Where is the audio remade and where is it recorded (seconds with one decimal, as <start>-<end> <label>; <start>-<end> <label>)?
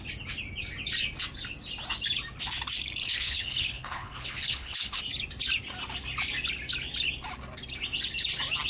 0.0-3.0 recorded; 3.0-5.0 remade; 5.0-8.7 recorded